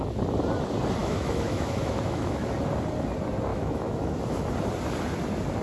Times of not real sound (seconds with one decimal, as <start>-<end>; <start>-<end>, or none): 1.0-2.5; 3.5-4.2